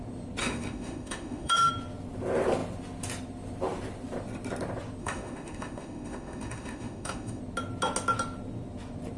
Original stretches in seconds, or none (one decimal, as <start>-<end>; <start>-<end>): 0.0-0.4; 1.7-5.0; 7.4-9.2